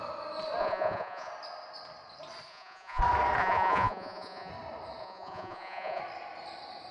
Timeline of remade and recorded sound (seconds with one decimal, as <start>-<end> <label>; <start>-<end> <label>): 0.0-0.6 recorded; 0.6-1.3 remade; 1.3-2.5 recorded; 2.5-3.0 remade; 3.0-3.4 recorded; 3.4-4.5 remade; 4.5-5.0 recorded; 5.0-6.0 remade; 6.0-6.9 recorded